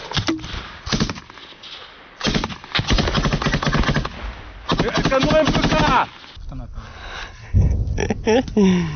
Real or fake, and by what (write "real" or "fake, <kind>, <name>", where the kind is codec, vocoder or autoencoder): real